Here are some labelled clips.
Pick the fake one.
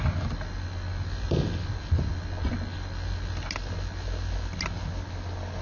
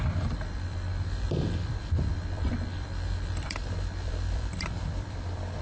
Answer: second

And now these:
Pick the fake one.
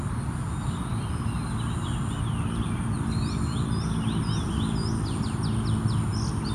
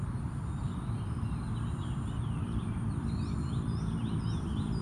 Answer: second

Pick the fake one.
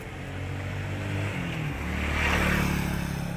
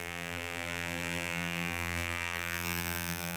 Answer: second